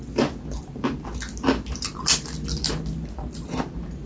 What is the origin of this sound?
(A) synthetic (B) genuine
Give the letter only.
B